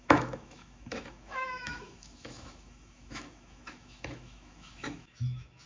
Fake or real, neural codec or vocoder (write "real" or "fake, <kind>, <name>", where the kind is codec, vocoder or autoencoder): fake, autoencoder, DAC-VAE